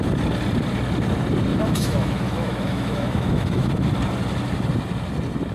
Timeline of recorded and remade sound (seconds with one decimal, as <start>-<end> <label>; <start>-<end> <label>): 0.0-1.5 recorded; 1.5-3.7 remade; 3.7-5.5 recorded